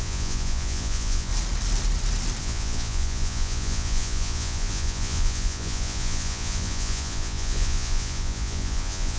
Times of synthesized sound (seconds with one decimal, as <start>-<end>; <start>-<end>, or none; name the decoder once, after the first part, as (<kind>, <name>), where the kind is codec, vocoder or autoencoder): 0.0-1.3 (vocoder, Vocos); 2.4-9.2